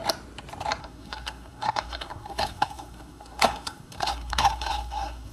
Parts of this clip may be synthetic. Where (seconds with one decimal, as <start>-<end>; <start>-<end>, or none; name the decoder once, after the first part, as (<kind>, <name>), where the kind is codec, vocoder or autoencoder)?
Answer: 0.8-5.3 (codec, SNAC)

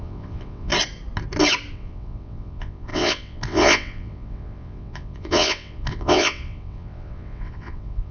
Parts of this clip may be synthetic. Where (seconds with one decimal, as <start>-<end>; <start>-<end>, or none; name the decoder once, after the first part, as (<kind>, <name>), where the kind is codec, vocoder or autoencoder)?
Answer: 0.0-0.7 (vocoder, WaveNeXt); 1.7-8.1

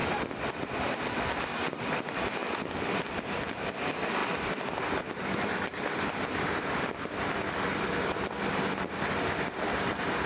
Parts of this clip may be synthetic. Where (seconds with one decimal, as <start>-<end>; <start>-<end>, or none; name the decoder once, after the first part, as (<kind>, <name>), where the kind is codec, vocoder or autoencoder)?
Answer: 0.0-2.4 (vocoder, BigVGAN v2); 3.2-4.2; 5.0-10.3

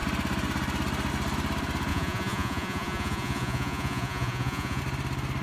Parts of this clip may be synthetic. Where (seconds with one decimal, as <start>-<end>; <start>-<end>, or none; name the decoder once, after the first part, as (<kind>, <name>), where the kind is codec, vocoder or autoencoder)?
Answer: 1.9-4.8 (vocoder, Vocos)